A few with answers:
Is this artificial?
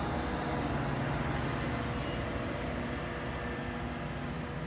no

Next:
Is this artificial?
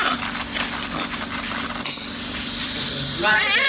no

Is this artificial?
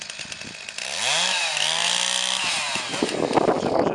no